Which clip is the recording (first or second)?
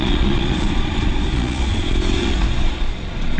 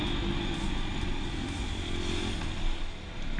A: second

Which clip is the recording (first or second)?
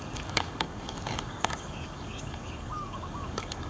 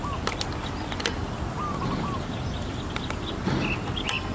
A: second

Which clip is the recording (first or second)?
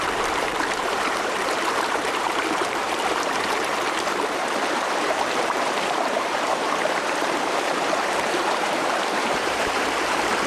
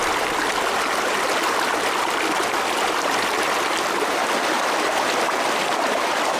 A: second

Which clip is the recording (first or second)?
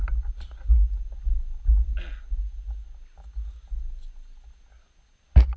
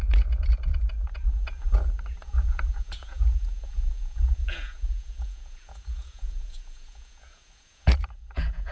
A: first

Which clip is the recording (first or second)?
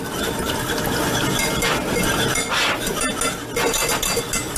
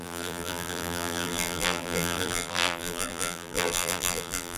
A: first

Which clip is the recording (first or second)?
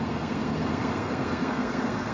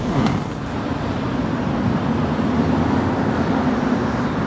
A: second